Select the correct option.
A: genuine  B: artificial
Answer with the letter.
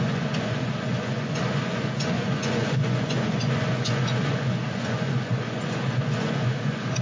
B